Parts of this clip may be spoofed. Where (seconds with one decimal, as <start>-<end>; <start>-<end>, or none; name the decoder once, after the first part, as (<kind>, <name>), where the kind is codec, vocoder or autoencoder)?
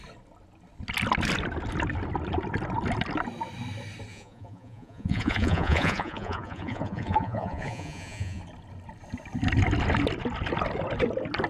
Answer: 4.1-8.4 (vocoder, Vocos)